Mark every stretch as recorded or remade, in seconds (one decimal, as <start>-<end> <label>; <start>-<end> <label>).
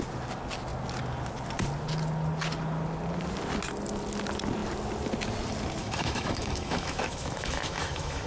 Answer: 0.0-5.8 recorded; 5.8-8.3 remade